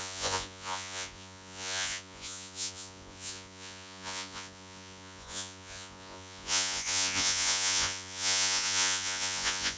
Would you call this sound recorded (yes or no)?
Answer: no